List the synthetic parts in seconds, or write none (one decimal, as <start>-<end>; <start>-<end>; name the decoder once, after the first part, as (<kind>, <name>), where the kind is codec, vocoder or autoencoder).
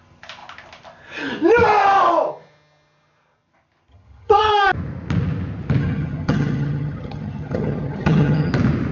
3.9-4.5 (vocoder, HiFi-GAN); 5.8-8.5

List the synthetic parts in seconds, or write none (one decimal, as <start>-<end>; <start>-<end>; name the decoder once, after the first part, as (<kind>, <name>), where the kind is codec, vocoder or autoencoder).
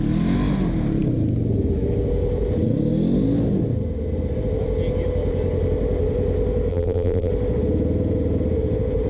6.7-7.3 (vocoder, BigVGAN v2)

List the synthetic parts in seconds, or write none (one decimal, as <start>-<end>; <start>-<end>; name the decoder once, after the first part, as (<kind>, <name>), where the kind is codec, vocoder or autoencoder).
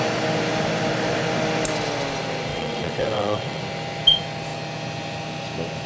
2.5-3.6 (vocoder, WaveNeXt)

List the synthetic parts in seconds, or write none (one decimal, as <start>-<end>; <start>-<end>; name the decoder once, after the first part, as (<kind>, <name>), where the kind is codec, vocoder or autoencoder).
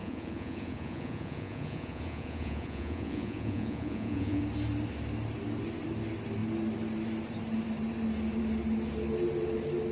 0.0-4.4 (vocoder, Vocos)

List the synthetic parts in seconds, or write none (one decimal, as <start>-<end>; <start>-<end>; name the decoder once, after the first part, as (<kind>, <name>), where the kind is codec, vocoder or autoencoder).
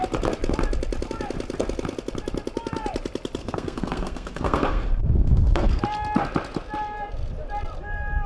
3.4-5.8 (codec, SNAC)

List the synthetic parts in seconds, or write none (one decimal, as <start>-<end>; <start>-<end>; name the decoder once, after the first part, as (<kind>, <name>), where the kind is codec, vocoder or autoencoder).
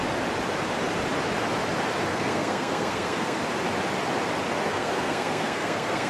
2.1-3.4 (codec, SNAC); 4.7-6.1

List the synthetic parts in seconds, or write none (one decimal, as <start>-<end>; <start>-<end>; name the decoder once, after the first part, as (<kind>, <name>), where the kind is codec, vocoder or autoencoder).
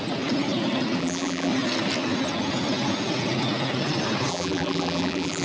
1.0-1.5 (vocoder, BigVGAN v2); 4.3-5.4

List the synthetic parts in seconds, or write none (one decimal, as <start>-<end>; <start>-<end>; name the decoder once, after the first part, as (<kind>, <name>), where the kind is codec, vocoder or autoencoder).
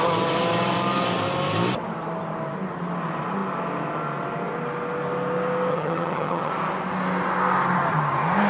5.7-6.5 (vocoder, HiFi-GAN)